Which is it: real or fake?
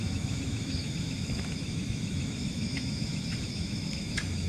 fake